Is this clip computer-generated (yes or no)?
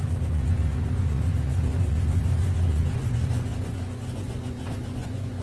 yes